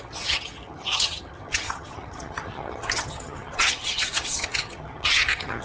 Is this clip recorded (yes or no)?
no